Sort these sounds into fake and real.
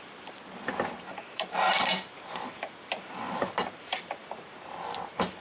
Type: fake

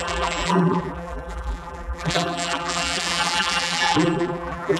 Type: fake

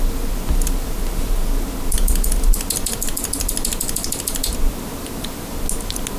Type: real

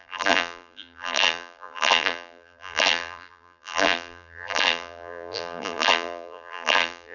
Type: fake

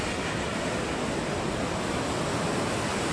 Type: real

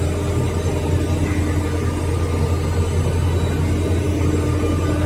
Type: real